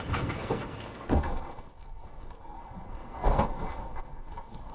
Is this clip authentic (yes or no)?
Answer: no